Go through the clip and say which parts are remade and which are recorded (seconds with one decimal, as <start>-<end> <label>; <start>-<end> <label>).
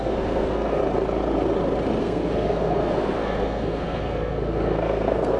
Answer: 0.0-0.8 remade; 0.8-2.0 recorded; 2.0-5.4 remade